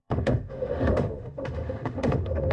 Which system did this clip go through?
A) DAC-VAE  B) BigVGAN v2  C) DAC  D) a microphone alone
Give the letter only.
A